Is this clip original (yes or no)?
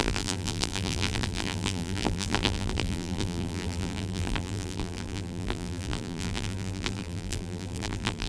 no